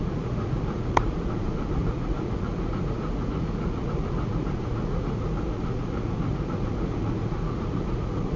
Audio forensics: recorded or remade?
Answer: remade